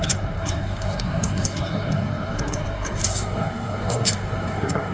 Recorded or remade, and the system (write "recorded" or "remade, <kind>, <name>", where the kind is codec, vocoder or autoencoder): remade, codec, SNAC